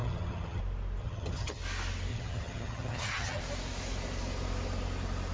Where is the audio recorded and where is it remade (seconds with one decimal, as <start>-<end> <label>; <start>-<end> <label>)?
0.0-0.6 remade; 0.6-1.0 recorded; 1.0-1.6 remade; 1.6-2.1 recorded; 2.1-3.4 remade; 3.4-5.3 recorded